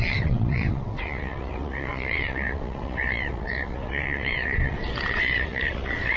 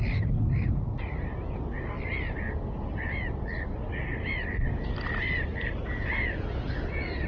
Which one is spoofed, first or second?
first